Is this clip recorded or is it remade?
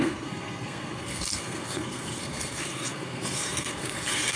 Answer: remade